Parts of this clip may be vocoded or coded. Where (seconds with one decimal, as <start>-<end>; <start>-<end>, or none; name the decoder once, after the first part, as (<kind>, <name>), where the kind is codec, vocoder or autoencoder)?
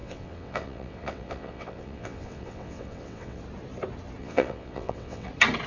0.0-3.4 (vocoder, WaveNeXt); 4.2-5.3